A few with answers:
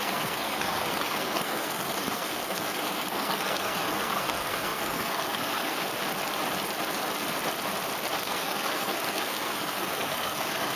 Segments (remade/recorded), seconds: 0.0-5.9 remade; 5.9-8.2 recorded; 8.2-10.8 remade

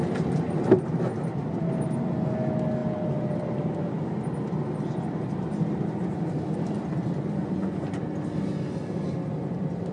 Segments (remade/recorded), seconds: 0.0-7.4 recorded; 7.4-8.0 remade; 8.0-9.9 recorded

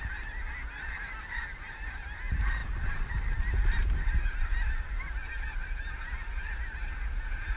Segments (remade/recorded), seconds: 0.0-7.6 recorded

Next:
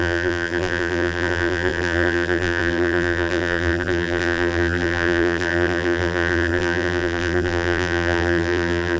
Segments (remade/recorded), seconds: 0.0-9.0 remade